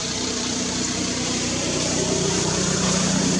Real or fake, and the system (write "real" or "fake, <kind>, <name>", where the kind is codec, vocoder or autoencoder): fake, vocoder, BigVGAN v2